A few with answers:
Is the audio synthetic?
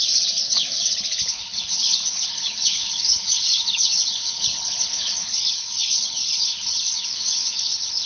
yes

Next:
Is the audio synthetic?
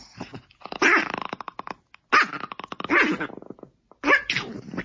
no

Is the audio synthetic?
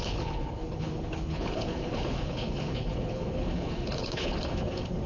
yes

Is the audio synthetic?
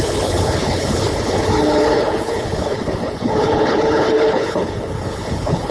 yes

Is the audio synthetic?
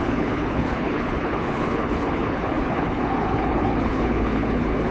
yes